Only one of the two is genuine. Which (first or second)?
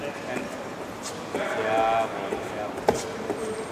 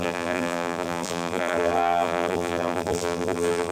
first